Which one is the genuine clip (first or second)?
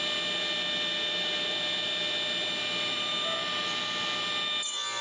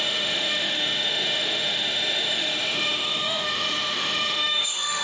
first